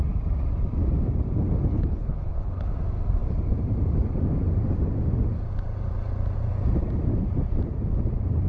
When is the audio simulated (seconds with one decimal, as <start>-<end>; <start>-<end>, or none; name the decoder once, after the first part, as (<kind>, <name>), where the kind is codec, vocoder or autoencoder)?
1.7-2.7 (codec, HILCodec)